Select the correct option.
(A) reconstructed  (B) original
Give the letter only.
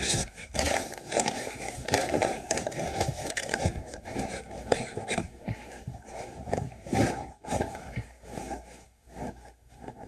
A